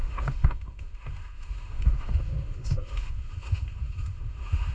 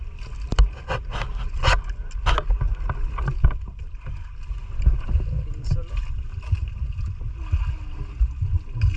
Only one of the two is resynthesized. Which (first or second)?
first